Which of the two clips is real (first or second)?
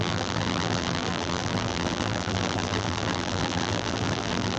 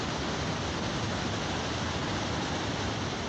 second